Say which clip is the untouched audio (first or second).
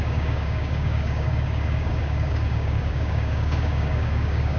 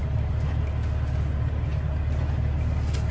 second